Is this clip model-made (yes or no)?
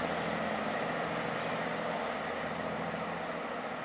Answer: no